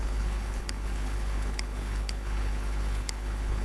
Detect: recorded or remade remade